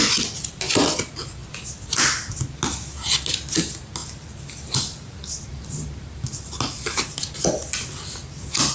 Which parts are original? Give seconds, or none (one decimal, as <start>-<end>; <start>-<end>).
0.0-4.0; 6.6-8.7